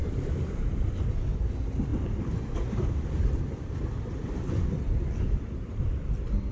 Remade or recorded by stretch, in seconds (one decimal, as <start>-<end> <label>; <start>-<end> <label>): 0.0-0.7 remade; 0.7-6.5 recorded